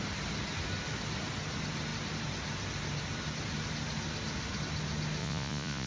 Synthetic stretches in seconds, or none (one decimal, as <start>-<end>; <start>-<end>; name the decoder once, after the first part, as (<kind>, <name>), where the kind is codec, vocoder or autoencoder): 5.2-5.9 (vocoder, Vocos)